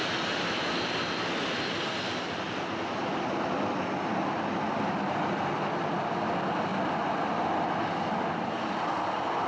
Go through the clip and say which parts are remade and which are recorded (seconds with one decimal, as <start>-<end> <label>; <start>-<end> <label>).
0.0-9.5 recorded